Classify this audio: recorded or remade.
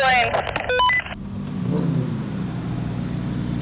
recorded